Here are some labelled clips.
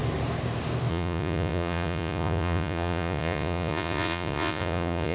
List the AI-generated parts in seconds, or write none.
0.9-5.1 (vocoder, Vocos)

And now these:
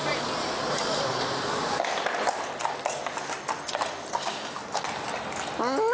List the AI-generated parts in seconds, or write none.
none

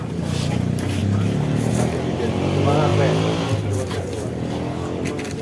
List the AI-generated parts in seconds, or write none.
none

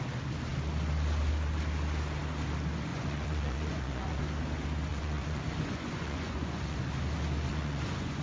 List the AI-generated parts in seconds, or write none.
2.9-4.2 (vocoder, Vocos); 4.9-6.8; 7.5-8.2

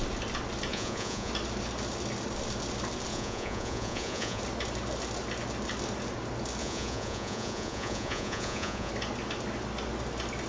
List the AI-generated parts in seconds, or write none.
0.7-1.3 (vocoder, Vocos); 3.1-4.4; 6.6-8.9